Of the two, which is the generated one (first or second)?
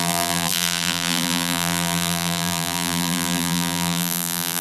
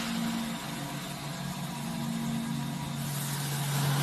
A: first